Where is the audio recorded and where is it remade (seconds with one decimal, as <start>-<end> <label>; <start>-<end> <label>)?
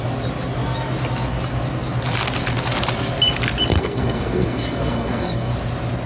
0.0-3.7 recorded; 3.7-5.5 remade; 5.5-6.1 recorded